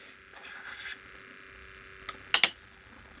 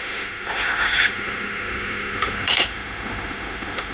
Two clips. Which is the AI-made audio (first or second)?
second